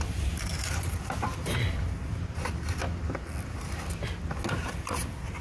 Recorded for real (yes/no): yes